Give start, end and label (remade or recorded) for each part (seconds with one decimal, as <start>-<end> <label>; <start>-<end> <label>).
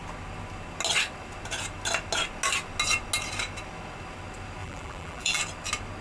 0.0-4.6 recorded; 4.6-5.4 remade; 5.4-6.0 recorded